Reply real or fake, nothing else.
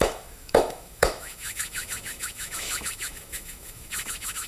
fake